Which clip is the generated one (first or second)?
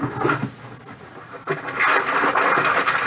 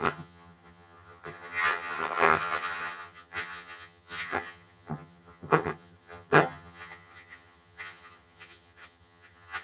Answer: second